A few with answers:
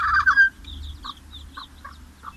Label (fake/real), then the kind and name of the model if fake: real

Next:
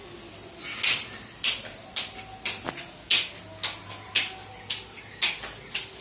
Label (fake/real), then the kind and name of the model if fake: real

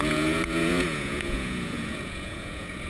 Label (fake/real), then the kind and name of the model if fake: fake, vocoder, Vocos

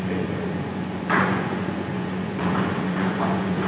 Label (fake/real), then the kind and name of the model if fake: fake, vocoder, Vocos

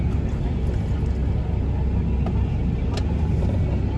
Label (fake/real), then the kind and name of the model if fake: real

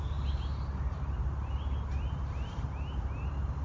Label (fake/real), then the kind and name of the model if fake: real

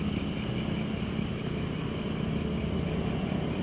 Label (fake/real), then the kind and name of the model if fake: real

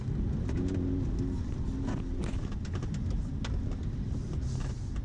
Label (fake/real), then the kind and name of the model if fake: real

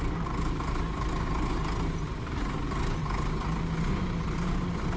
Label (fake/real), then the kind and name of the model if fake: real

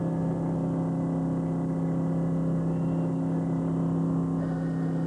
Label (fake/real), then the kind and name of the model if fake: real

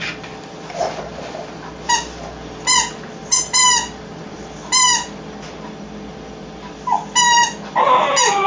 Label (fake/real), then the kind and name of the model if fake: real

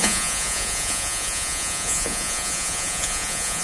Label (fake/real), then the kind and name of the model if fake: fake, vocoder, Vocos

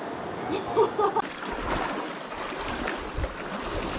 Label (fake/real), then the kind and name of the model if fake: real